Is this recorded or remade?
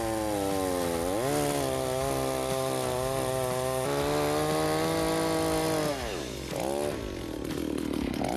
recorded